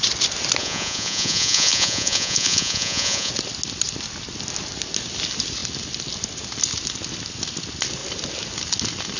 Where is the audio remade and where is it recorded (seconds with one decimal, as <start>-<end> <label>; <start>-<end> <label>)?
0.0-0.6 recorded; 0.6-3.3 remade; 3.3-9.2 recorded